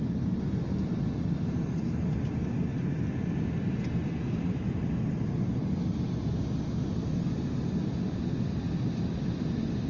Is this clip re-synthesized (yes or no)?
no